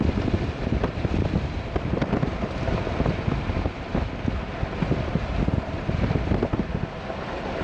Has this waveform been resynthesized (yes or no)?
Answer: yes